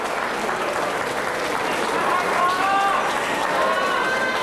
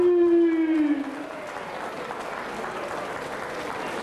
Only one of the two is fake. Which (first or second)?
first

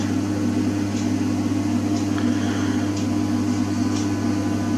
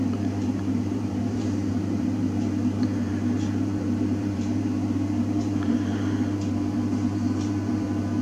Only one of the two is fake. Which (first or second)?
second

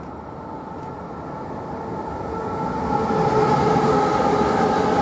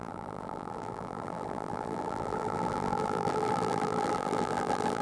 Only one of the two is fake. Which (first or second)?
second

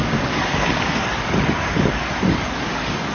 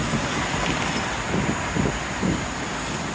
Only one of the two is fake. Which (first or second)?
first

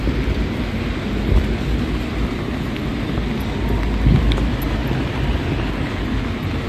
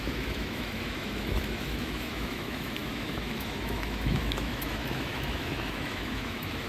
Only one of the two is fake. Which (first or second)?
second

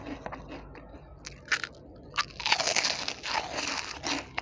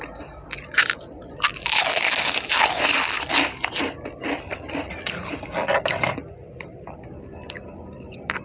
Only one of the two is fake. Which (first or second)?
second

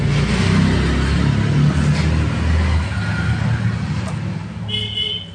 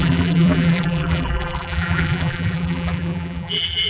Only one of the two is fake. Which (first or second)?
second